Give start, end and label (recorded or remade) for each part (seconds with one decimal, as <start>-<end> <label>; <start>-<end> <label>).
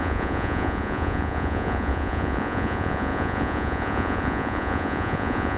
0.0-5.6 remade